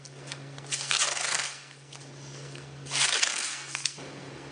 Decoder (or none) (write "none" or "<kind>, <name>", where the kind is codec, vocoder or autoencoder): codec, SNAC